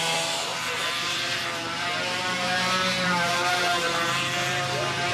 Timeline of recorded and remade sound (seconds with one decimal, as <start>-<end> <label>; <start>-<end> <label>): 0.0-5.1 remade